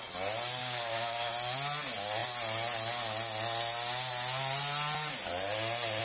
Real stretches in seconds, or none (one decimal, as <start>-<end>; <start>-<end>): 0.0-0.6; 1.3-6.0